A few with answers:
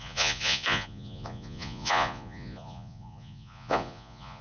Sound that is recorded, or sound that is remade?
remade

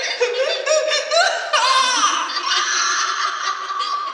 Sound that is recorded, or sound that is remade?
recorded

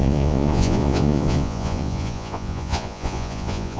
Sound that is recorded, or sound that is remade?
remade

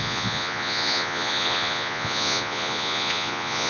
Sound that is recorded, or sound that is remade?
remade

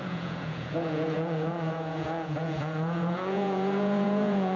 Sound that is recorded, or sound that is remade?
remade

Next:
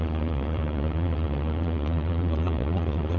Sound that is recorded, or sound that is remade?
remade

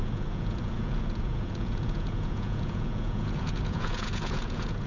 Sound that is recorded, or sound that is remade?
remade